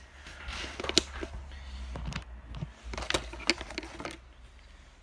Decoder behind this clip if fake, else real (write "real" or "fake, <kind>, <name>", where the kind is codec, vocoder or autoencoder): real